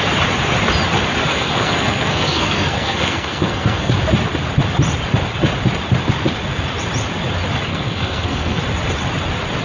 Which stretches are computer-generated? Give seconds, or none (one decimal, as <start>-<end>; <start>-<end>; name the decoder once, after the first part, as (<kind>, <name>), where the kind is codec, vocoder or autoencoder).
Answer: 1.3-3.9 (codec, SNAC); 7.7-8.6